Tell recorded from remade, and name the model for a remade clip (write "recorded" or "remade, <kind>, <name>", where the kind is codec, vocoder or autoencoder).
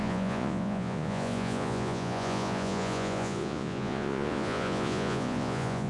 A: remade, vocoder, Vocos